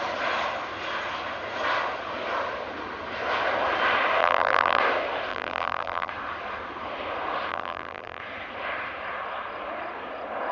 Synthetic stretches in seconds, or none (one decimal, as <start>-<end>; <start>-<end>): 4.2-4.8; 5.3-6.1; 7.5-8.2